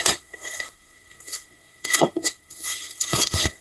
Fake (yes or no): yes